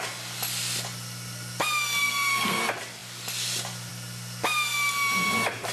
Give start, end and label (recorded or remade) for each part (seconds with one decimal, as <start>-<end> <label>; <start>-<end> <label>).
0.0-2.0 recorded; 2.0-2.6 remade; 2.6-5.7 recorded